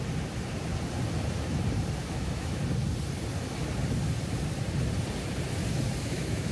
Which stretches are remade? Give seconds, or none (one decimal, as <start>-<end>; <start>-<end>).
2.0-2.6; 6.0-6.5